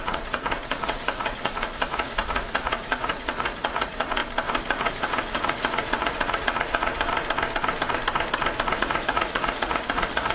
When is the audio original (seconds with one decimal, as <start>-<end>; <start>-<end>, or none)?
4.2-4.7; 7.1-8.8